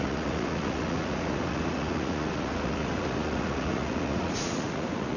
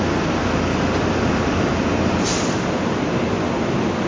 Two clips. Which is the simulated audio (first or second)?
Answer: first